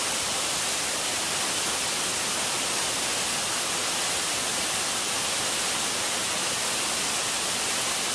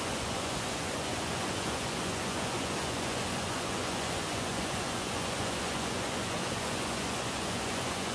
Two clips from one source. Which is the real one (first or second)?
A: first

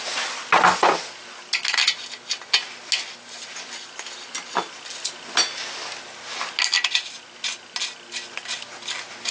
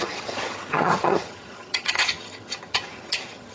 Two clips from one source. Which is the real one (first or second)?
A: first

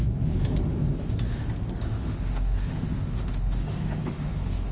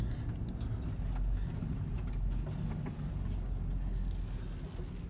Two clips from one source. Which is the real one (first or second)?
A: second